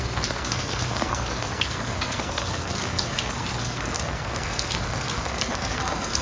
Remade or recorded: remade